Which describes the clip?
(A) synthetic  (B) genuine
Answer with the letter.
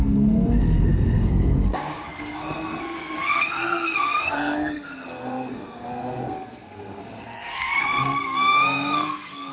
A